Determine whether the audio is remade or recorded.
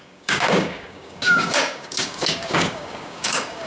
remade